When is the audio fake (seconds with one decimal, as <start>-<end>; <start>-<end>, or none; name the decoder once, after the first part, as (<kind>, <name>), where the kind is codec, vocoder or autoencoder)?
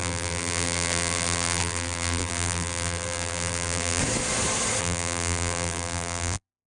0.0-4.0 (vocoder, BigVGAN v2); 4.8-6.7